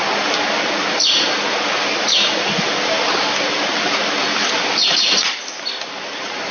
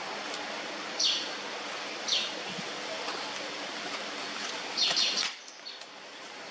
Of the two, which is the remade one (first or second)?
second